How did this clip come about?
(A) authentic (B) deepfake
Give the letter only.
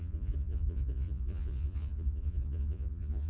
B